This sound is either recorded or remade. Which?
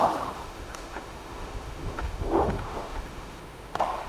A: remade